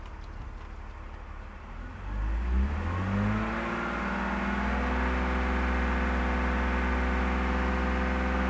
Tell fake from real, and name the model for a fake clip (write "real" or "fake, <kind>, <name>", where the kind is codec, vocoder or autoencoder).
real